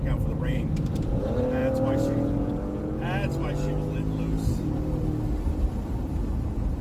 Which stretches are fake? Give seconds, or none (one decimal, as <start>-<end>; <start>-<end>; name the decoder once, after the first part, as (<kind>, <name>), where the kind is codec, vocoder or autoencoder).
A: 0.0-1.6 (vocoder, BigVGAN v2); 5.7-6.8